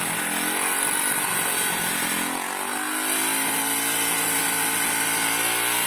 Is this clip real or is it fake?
real